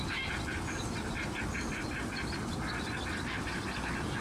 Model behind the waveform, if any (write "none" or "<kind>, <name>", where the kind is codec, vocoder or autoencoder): none